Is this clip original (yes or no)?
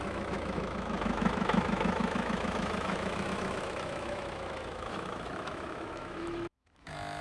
no